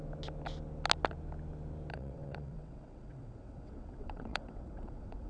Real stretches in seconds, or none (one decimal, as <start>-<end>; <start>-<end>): 0.0-1.9

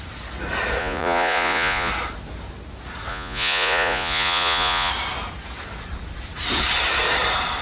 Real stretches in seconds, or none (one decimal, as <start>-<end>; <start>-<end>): 0.0-0.8; 1.9-3.1; 4.9-7.6

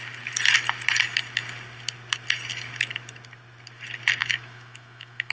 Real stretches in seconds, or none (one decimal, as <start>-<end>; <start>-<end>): 0.0-4.2

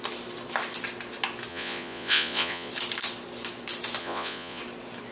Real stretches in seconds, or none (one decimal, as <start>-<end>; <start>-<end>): 0.0-1.5; 2.7-4.0; 4.6-5.1

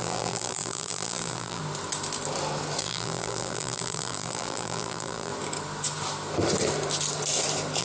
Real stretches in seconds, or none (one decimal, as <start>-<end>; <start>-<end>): 1.6-2.8; 5.3-7.8

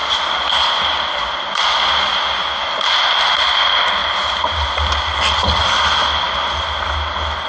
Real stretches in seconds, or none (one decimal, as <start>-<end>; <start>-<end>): 0.0-7.5